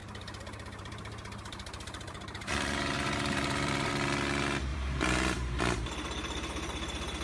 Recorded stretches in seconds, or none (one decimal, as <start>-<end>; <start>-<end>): 3.9-4.7; 5.6-7.2